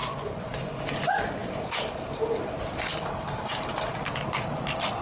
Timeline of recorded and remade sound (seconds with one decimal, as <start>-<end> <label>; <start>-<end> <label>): 0.0-0.8 remade; 0.8-5.0 recorded